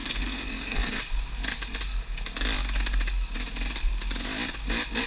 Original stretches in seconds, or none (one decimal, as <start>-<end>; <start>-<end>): 1.0-5.1